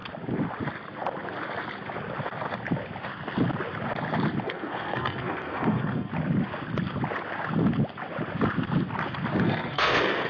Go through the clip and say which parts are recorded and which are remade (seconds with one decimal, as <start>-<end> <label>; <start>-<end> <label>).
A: 0.0-4.4 recorded; 4.4-6.1 remade; 6.1-9.4 recorded; 9.4-10.3 remade